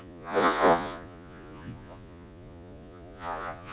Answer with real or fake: fake